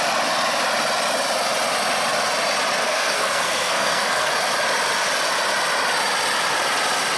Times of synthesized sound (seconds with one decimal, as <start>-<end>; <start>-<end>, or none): 2.8-4.3